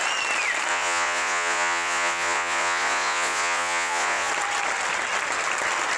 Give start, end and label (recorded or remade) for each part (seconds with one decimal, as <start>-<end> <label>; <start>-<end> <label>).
0.0-0.7 recorded; 0.7-4.3 remade; 4.3-6.0 recorded

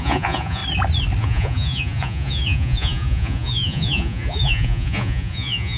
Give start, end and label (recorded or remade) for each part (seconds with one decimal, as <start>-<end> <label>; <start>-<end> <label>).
0.0-0.6 remade; 0.6-1.2 recorded; 1.2-5.8 remade